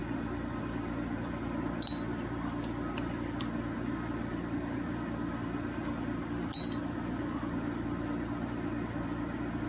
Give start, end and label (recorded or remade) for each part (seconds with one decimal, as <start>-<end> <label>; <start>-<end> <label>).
0.0-9.7 recorded